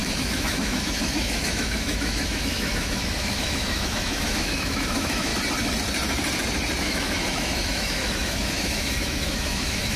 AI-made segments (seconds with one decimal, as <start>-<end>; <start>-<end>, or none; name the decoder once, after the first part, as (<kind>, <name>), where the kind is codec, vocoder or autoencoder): 0.0-5.3 (autoencoder, DAC-VAE); 6.8-10.0